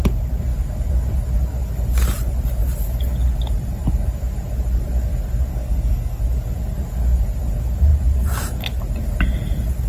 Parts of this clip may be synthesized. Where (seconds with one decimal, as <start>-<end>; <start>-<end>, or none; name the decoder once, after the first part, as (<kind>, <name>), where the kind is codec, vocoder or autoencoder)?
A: 5.5-6.2 (codec, DAC)